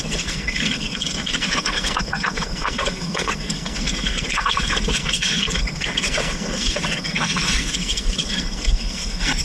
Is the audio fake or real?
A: fake